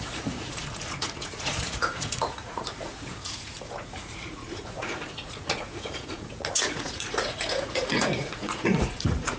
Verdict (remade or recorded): remade